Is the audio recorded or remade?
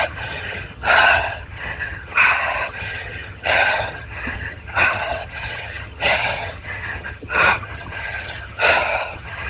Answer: remade